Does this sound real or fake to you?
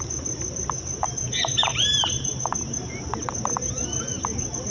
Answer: fake